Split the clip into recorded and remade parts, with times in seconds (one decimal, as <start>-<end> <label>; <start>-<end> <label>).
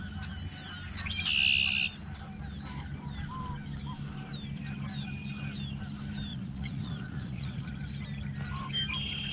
0.0-6.3 recorded; 6.3-7.7 remade; 7.7-9.3 recorded